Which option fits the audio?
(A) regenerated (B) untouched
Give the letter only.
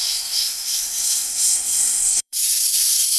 A